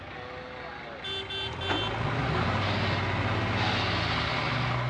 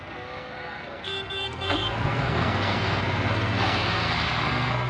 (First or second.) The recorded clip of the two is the first